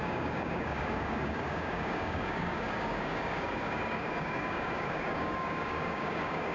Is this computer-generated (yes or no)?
yes